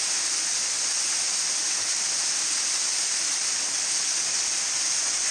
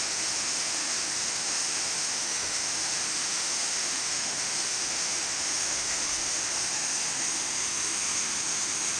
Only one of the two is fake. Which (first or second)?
second